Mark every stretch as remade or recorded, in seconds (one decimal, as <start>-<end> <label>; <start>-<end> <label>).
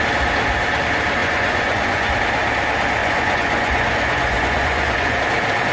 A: 0.0-1.2 recorded; 1.2-2.1 remade; 2.1-3.0 recorded; 3.0-5.2 remade; 5.2-5.7 recorded